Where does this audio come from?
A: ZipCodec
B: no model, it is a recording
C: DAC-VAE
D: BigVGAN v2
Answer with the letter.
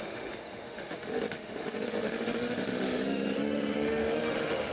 C